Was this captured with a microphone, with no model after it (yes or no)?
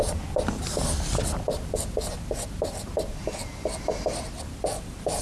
yes